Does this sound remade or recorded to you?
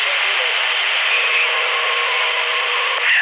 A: recorded